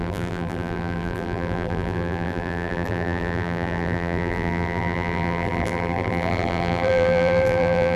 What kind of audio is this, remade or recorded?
remade